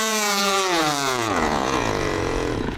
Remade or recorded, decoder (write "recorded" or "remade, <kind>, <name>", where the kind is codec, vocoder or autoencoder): remade, vocoder, Vocos